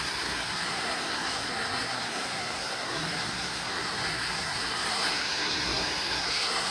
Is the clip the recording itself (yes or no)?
no